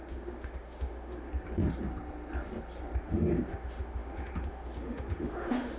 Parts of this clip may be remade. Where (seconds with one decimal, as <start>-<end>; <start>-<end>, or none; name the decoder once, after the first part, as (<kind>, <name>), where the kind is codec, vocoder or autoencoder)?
0.0-1.3 (autoencoder, DAC-VAE); 3.0-5.8